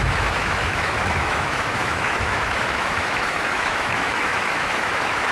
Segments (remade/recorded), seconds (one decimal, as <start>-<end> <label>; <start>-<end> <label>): 0.0-5.3 remade